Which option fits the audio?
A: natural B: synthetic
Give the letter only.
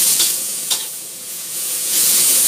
B